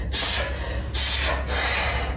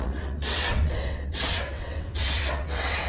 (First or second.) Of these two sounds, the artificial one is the second